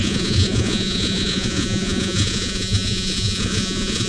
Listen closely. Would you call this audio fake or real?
fake